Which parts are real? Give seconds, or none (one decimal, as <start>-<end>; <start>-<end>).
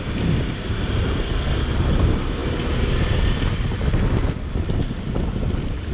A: 3.8-5.9